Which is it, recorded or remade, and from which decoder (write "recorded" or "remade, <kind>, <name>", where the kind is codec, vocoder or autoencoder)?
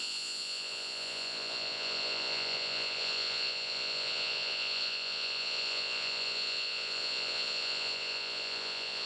remade, vocoder, Vocos